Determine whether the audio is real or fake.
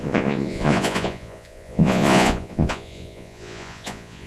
fake